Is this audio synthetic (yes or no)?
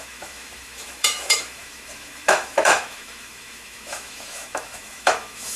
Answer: yes